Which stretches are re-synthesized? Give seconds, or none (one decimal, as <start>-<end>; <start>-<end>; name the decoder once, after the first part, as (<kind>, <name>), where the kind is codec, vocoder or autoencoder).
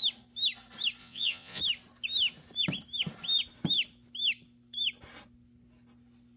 1.0-1.6 (vocoder, Vocos)